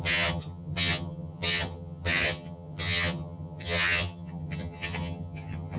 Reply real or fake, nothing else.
fake